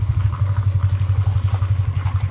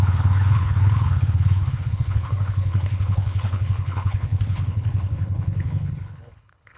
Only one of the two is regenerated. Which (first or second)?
second